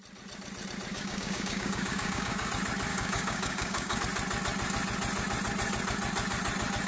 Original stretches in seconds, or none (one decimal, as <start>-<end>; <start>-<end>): 0.0-0.9; 2.5-2.9; 4.0-6.9